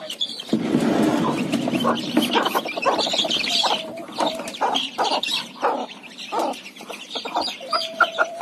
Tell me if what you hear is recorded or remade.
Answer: remade